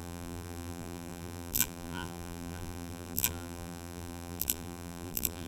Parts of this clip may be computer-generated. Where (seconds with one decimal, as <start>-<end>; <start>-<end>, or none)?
0.0-5.5